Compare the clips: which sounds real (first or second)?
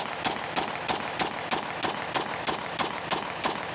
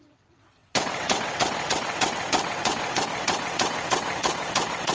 first